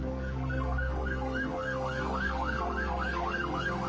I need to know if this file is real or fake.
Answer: fake